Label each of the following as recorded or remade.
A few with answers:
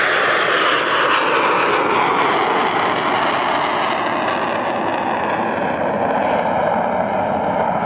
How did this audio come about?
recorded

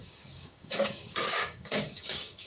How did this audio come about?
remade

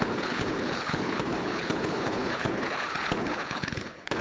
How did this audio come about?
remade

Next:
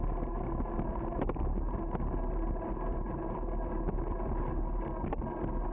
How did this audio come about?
recorded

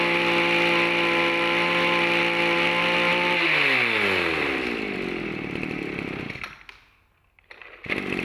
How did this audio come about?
recorded